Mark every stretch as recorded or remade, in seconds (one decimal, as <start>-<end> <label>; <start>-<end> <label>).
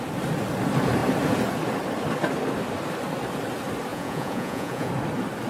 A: 0.0-3.9 recorded; 3.9-4.9 remade; 4.9-5.5 recorded